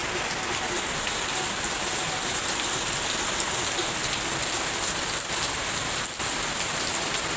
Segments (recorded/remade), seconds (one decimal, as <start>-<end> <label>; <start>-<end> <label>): 0.0-7.4 recorded